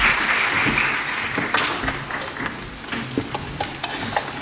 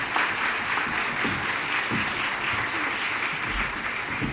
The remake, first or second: second